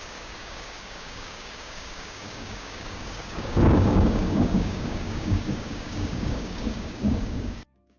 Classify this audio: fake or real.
fake